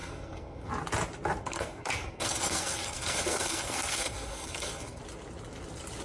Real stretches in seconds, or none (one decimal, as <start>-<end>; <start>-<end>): 0.7-1.4; 5.0-6.0